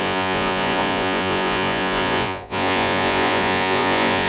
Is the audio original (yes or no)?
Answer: no